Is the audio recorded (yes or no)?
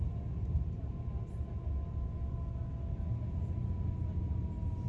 yes